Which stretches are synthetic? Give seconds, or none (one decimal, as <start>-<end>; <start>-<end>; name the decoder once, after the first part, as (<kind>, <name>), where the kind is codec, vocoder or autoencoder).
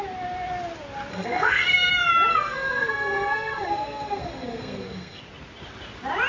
1.1-1.9 (codec, SNAC); 2.3-5.2